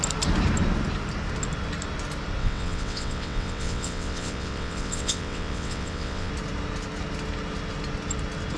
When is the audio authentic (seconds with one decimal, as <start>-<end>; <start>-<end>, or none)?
0.0-2.4; 6.3-8.6